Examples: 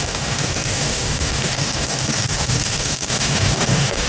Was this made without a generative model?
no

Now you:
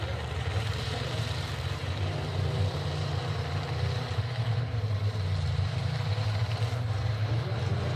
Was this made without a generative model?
no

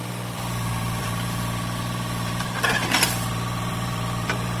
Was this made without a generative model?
no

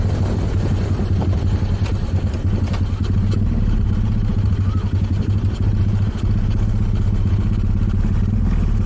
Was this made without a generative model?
yes